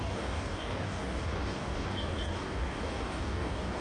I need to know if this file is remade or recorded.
remade